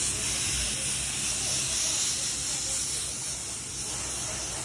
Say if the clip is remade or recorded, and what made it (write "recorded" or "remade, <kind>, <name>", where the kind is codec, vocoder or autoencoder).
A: recorded